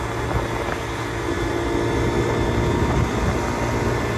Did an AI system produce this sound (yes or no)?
no